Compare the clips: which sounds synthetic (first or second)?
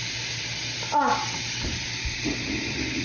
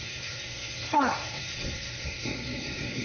second